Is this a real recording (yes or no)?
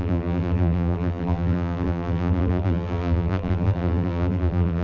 no